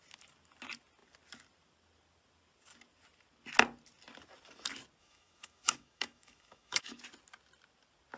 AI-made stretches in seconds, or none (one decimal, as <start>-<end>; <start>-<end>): 5.0-7.0